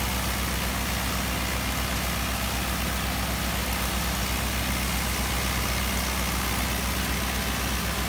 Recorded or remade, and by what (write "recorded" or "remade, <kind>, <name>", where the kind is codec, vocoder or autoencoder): recorded